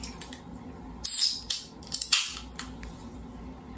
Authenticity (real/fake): real